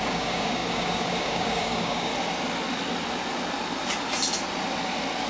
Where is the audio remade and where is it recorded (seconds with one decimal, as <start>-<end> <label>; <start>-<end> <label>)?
0.0-2.1 remade; 2.1-5.3 recorded